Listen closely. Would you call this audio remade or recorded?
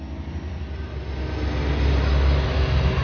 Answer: recorded